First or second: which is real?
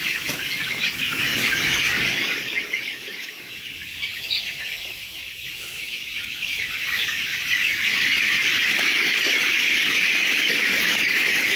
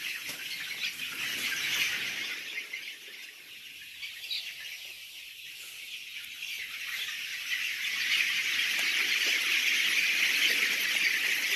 second